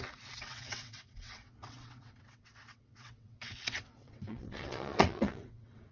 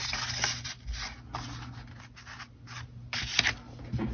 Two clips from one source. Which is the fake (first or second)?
first